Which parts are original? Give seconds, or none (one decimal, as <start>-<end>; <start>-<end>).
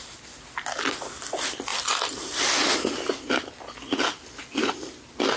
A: 0.0-1.7; 2.9-5.4